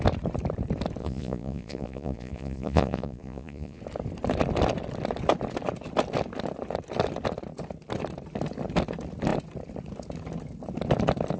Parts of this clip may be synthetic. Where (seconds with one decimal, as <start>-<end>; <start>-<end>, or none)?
1.0-3.8